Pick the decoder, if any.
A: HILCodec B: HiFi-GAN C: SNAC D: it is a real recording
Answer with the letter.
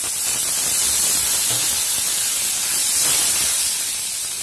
D